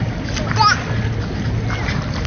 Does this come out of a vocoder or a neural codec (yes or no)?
no